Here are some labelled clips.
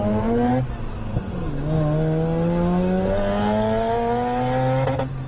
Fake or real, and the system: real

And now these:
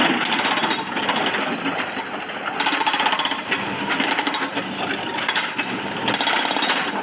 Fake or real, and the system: real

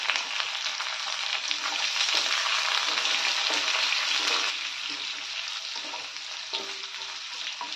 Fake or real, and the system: real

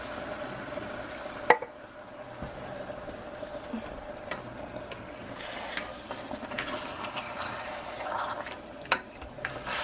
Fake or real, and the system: real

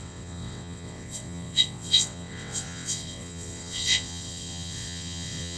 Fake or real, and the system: fake, vocoder, WaveNeXt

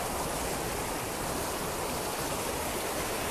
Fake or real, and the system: real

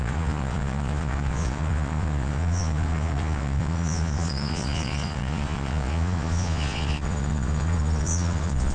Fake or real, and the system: fake, vocoder, Vocos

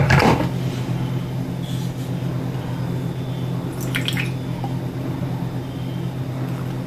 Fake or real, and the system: real